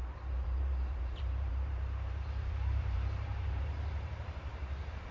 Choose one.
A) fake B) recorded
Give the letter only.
A